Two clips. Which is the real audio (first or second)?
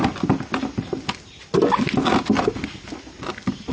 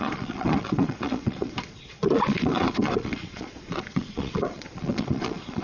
first